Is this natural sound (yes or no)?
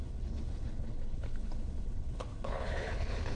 no